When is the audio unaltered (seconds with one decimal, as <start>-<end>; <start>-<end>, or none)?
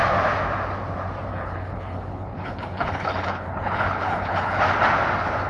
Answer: 0.0-1.3; 4.6-5.5